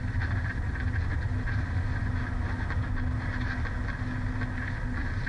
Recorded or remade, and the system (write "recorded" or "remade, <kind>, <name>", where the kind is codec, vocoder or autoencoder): recorded